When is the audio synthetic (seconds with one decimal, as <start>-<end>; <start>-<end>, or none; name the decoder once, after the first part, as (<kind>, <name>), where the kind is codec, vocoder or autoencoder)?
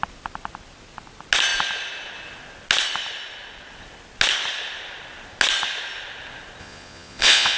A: 6.6-7.6 (vocoder, Vocos)